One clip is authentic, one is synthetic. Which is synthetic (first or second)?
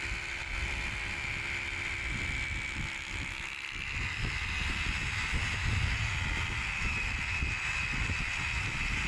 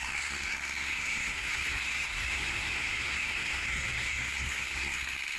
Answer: second